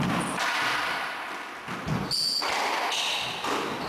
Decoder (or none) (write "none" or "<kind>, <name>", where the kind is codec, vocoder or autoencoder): none